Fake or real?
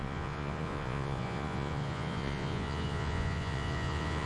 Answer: fake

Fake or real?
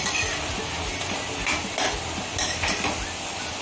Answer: real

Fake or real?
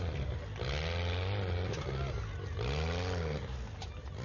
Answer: real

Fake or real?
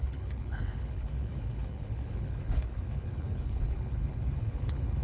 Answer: fake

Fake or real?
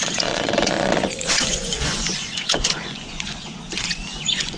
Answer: fake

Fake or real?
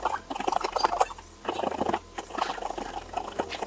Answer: real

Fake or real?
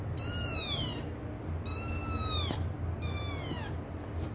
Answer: real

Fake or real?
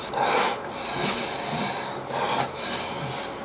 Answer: real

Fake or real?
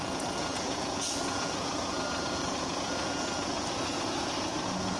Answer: fake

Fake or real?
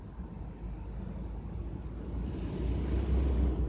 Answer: real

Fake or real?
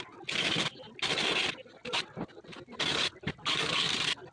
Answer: real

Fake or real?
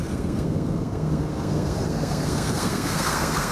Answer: fake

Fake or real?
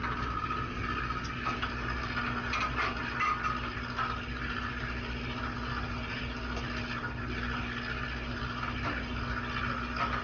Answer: real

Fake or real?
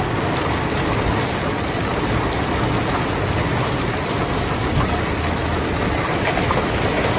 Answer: real